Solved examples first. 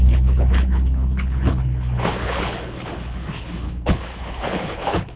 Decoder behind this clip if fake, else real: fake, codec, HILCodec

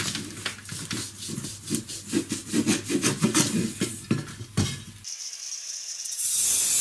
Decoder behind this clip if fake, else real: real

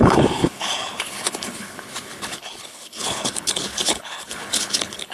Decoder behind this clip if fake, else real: fake, codec, HILCodec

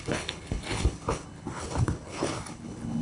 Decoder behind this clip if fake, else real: fake, codec, HILCodec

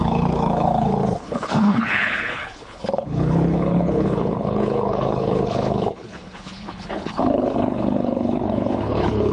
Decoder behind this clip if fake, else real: fake, codec, HILCodec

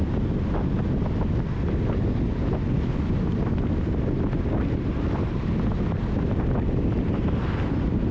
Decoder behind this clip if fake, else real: real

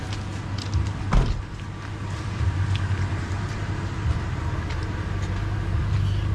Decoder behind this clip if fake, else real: real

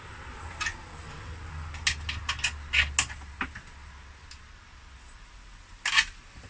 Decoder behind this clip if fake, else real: real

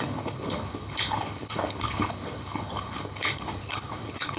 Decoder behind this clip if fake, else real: fake, codec, HILCodec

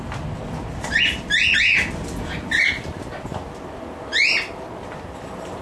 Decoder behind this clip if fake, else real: real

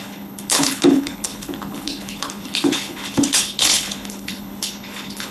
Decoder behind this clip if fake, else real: fake, codec, HILCodec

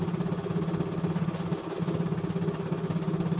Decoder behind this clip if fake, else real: real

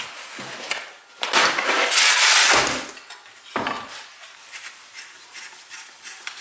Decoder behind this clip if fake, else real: real